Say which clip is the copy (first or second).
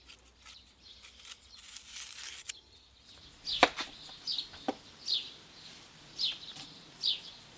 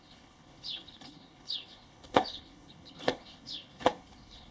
second